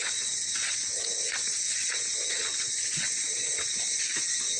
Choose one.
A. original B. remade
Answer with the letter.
B